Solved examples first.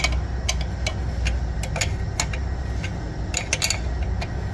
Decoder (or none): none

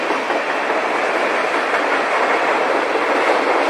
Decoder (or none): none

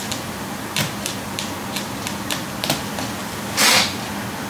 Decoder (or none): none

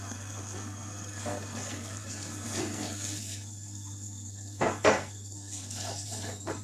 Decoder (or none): codec, SNAC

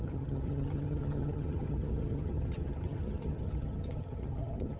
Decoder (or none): vocoder, HiFi-GAN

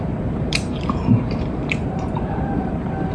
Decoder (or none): vocoder, BigVGAN v2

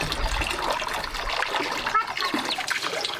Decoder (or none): none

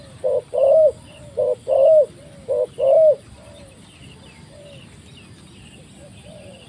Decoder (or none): none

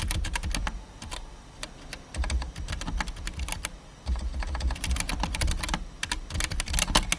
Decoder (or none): none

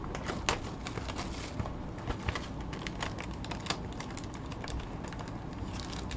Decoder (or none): none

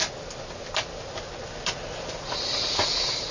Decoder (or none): none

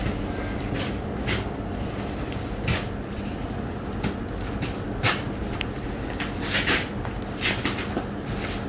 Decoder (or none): none